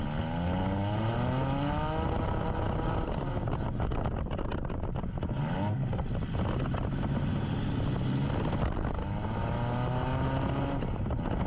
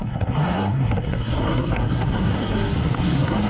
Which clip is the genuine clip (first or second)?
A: first